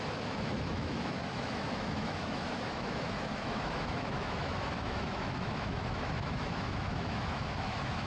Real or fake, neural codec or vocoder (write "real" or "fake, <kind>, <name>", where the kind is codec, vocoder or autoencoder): fake, autoencoder, DAC-VAE